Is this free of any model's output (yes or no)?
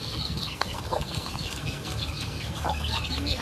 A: no